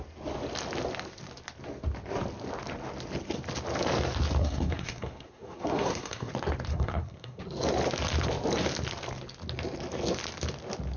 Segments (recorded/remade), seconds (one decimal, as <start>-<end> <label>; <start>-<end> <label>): 0.0-4.4 recorded; 4.4-6.3 remade; 6.3-6.7 recorded; 6.7-7.4 remade; 7.4-11.0 recorded